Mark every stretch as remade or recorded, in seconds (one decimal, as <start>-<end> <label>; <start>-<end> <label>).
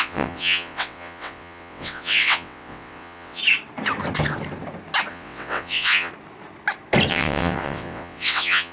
0.0-3.4 remade; 3.4-5.1 recorded; 5.1-6.1 remade; 6.1-7.1 recorded; 7.1-8.7 remade